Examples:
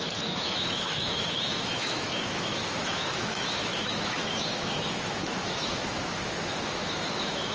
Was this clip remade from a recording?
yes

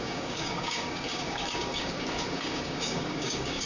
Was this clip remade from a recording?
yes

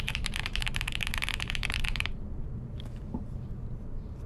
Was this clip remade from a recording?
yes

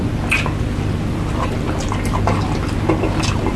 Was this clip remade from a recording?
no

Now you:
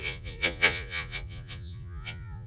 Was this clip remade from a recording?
yes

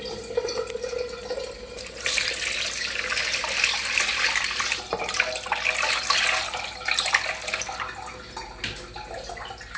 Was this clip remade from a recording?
no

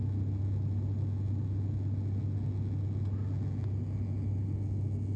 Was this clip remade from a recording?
no